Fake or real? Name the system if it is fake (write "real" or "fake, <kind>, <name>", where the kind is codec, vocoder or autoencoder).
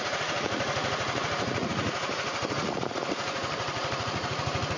fake, vocoder, Vocos